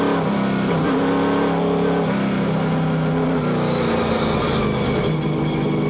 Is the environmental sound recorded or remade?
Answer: recorded